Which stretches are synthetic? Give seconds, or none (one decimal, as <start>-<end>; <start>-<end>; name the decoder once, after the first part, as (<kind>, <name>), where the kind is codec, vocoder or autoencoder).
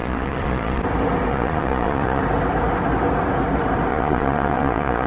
0.0-0.8 (vocoder, Vocos); 1.3-2.2; 3.9-5.1